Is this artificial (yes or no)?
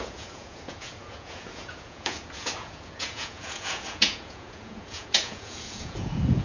yes